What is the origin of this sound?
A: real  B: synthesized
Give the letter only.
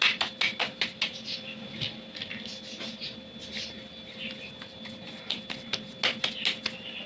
A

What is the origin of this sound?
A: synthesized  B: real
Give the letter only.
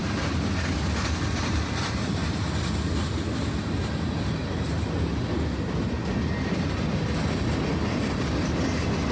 B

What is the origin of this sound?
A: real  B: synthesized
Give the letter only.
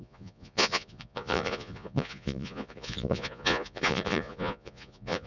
B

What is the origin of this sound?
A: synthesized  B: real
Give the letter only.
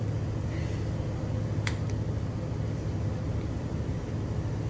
B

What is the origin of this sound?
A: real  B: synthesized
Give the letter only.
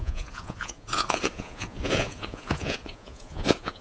B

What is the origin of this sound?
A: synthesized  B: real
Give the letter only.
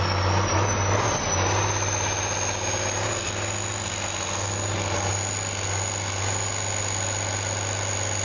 B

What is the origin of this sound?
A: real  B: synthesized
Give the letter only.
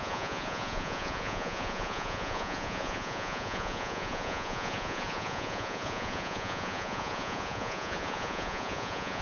B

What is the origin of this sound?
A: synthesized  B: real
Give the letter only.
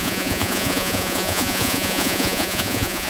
A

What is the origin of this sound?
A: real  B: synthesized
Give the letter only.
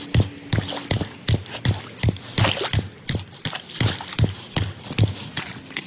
A